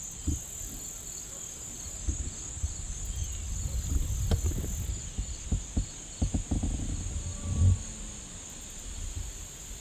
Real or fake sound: real